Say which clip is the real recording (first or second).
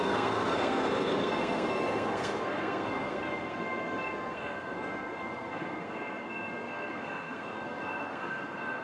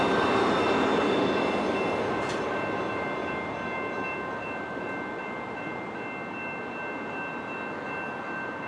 second